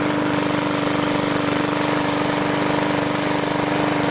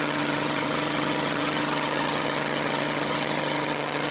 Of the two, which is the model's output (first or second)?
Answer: second